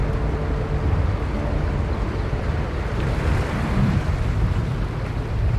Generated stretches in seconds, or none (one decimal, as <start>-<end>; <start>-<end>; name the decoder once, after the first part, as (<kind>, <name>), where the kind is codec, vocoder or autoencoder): 3.4-4.7 (vocoder, BigVGAN v2)